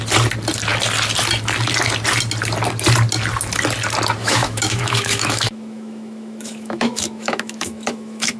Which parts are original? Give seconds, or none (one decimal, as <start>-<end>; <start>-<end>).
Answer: 0.0-4.2